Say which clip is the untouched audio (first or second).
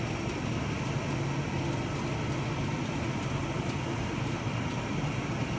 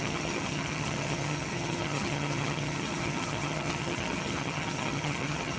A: first